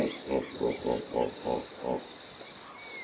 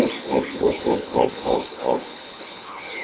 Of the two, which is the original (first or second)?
first